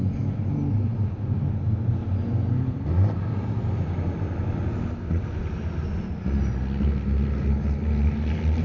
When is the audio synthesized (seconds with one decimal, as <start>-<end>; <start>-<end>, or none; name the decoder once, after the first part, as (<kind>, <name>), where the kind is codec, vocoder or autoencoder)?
none